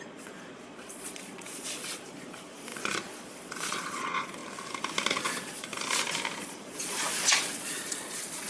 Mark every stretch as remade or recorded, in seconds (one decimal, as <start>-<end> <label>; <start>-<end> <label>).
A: 0.0-4.4 remade; 4.4-5.2 recorded; 5.2-5.7 remade; 5.7-6.4 recorded; 6.4-8.5 remade